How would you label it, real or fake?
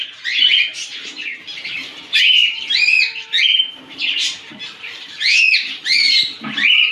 fake